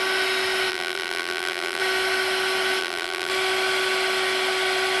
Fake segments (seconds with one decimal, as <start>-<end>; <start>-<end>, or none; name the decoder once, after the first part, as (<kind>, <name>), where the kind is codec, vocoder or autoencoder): 0.7-1.8 (vocoder, BigVGAN v2); 2.8-3.3